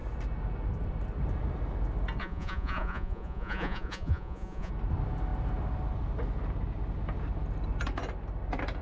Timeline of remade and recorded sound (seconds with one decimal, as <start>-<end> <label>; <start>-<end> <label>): 0.0-2.2 recorded; 2.2-4.7 remade; 4.7-8.8 recorded